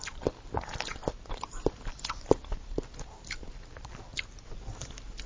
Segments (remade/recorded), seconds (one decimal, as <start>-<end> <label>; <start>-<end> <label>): 0.0-5.3 recorded

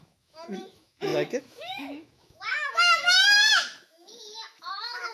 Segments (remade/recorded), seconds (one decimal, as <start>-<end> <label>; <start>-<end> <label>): 0.0-5.1 remade

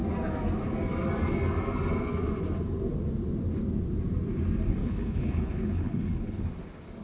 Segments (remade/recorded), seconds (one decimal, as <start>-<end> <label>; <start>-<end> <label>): 0.0-4.8 recorded; 4.8-6.4 remade; 6.4-7.0 recorded